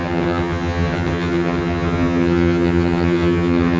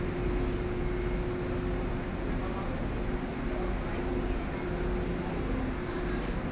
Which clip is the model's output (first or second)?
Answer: first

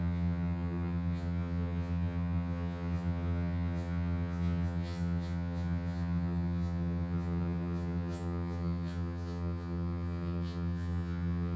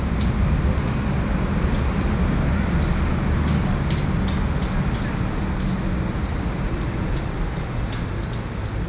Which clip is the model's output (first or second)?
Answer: first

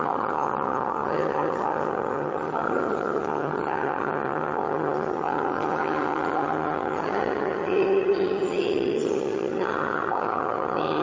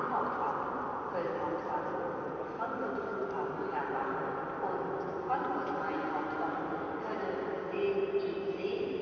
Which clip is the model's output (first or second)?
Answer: first